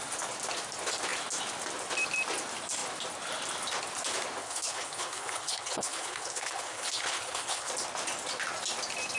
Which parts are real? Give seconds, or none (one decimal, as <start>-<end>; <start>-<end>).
0.0-4.4; 7.7-9.2